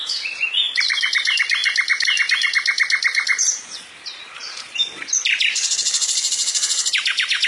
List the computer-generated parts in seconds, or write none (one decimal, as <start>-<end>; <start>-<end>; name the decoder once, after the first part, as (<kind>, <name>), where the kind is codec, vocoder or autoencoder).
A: 0.0-1.6 (vocoder, BigVGAN v2); 3.6-7.5